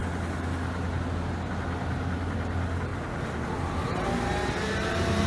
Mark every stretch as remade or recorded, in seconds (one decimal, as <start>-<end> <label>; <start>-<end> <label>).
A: 0.0-5.3 recorded